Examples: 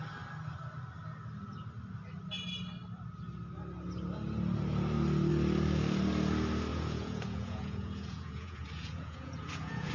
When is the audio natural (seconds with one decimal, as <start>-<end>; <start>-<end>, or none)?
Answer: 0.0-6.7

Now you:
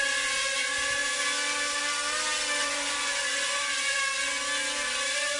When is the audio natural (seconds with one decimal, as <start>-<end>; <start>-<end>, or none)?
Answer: 0.0-2.6; 4.0-5.4

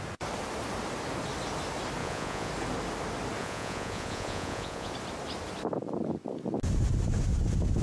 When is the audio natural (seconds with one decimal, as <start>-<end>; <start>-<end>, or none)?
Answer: 0.0-2.0; 2.5-3.4; 4.9-7.8